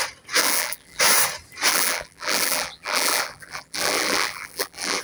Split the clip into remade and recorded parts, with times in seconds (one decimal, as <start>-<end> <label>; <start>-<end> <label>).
0.0-0.4 recorded; 0.4-1.0 remade; 1.0-1.7 recorded; 1.7-5.0 remade